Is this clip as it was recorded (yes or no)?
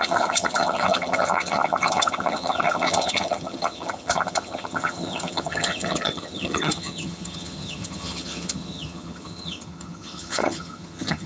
no